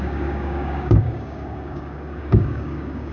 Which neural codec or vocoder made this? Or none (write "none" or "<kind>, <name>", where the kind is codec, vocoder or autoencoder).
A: codec, DAC